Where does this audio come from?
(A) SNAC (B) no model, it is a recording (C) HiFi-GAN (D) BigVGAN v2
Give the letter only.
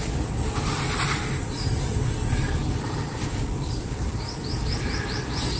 B